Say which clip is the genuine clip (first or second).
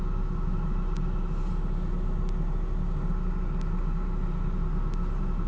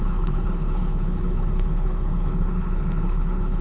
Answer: first